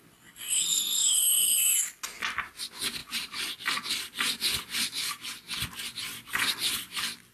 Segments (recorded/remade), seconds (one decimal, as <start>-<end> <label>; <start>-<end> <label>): 0.0-0.7 recorded; 0.7-1.7 remade; 1.7-3.0 recorded; 3.0-5.3 remade; 5.3-7.3 recorded